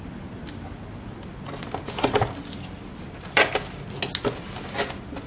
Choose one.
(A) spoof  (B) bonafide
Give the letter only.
B